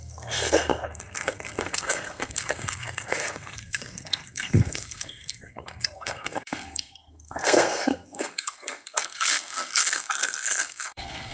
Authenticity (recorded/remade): remade